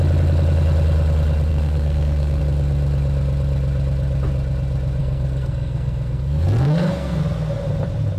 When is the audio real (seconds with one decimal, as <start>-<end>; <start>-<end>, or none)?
0.0-1.5; 2.4-5.0; 7.2-8.2